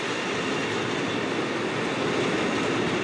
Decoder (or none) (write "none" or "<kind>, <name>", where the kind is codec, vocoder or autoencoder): none